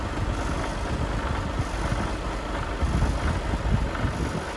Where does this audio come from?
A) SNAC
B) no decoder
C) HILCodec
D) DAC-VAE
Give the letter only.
B